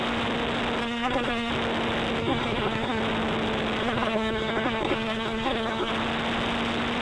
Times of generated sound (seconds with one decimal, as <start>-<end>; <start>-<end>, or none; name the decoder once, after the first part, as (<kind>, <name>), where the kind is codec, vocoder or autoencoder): 0.8-1.5 (codec, SNAC); 2.2-3.0; 3.8-5.9